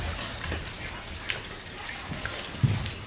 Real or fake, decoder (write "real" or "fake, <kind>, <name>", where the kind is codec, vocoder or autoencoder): real